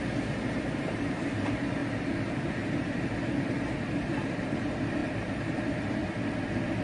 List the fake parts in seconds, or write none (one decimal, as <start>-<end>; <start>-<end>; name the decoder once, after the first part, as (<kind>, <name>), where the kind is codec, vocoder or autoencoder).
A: 0.0-1.8 (vocoder, BigVGAN v2); 3.4-6.0